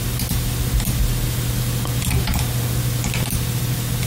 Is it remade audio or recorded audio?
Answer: recorded